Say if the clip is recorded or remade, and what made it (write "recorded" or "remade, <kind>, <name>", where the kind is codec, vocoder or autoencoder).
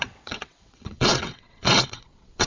remade, vocoder, WaveNeXt